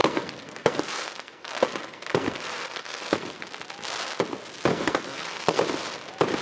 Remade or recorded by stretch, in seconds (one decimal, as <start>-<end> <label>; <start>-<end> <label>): 0.0-3.4 remade; 3.4-4.7 recorded; 4.7-5.6 remade; 5.6-6.4 recorded